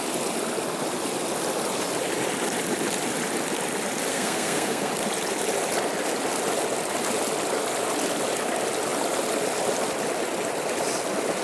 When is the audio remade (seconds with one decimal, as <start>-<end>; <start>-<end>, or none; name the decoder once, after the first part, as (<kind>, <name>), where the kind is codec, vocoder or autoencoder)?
4.1-4.9 (codec, SNAC)